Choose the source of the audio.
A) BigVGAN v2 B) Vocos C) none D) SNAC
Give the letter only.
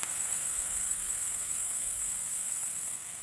D